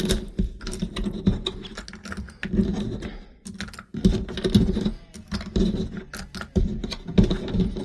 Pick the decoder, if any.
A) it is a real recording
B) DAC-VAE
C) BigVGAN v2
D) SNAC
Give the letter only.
A